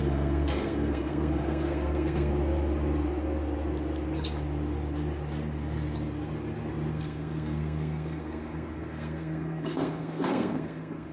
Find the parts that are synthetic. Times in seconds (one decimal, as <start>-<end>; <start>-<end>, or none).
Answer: 0.0-2.3; 6.9-11.1

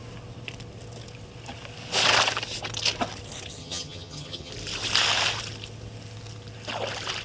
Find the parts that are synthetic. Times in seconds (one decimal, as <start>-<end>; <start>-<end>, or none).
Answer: 3.6-4.5

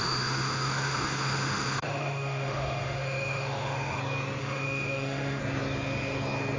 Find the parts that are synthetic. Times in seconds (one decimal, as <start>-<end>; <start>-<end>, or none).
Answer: 0.0-4.0; 4.4-5.4